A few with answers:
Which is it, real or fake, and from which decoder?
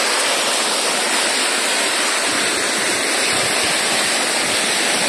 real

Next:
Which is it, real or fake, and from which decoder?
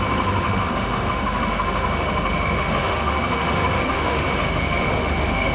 fake, autoencoder, DAC-VAE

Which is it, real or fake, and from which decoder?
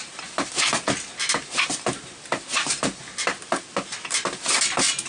real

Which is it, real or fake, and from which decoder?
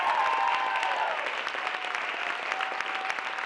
real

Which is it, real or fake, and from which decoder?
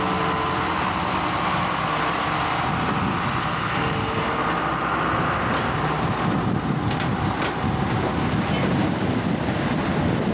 real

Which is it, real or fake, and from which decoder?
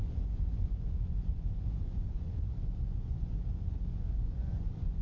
fake, vocoder, Vocos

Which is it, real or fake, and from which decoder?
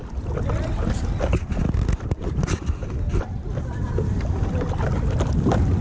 real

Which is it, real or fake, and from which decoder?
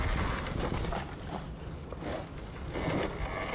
real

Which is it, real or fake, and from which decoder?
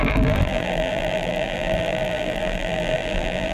fake, vocoder, BigVGAN v2